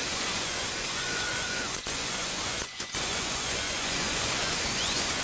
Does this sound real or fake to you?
fake